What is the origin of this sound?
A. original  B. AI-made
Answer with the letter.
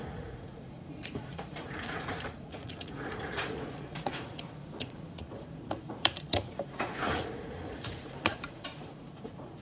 B